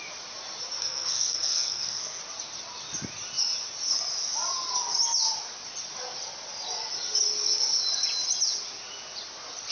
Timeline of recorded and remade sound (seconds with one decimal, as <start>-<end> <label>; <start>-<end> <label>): 0.0-0.8 recorded; 0.8-2.2 remade; 2.2-9.7 recorded